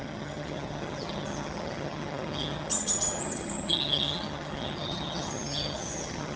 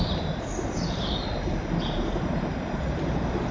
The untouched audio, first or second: second